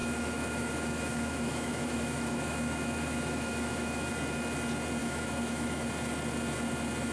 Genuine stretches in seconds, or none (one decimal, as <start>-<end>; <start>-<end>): 4.1-5.0; 5.9-7.1